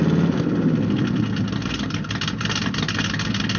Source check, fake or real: real